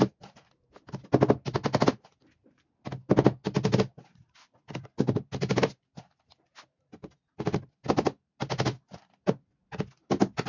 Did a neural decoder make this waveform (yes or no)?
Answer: no